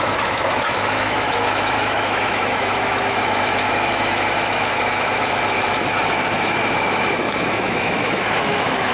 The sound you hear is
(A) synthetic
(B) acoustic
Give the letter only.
A